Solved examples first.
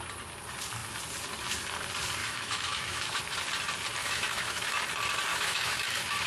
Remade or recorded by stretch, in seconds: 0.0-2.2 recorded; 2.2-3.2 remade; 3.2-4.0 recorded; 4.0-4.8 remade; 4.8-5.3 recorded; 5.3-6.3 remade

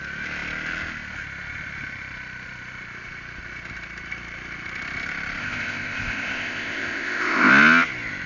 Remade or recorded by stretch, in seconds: 0.0-5.4 recorded; 5.4-7.5 remade; 7.5-8.3 recorded

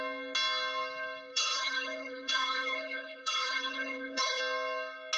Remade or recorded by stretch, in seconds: 0.0-1.3 recorded; 1.3-4.4 remade; 4.4-5.2 recorded